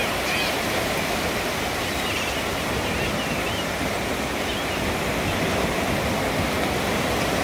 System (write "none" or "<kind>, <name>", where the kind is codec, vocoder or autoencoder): none